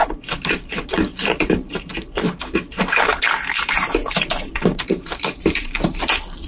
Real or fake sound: fake